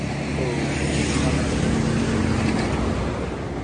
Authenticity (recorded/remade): recorded